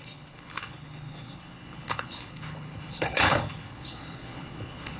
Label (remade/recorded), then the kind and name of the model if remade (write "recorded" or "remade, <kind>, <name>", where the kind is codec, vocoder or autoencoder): remade, codec, HILCodec